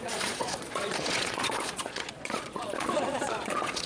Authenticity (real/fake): fake